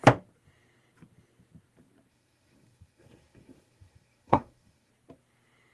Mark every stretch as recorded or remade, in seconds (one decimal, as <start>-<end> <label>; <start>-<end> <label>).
0.0-2.1 recorded; 2.1-4.9 remade; 4.9-5.7 recorded